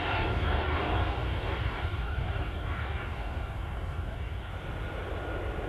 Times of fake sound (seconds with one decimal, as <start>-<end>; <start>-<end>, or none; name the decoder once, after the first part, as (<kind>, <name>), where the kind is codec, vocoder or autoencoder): 0.0-4.5 (codec, DAC)